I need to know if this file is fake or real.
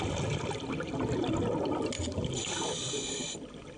real